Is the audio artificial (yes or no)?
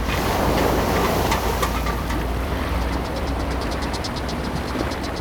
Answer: yes